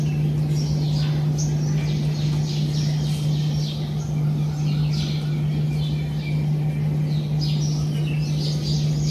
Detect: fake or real real